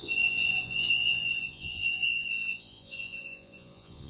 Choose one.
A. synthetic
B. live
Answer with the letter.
A